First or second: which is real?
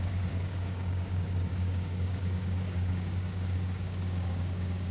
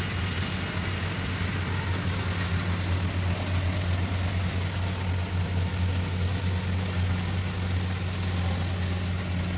second